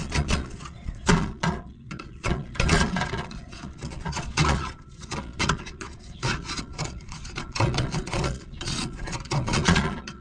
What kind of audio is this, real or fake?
fake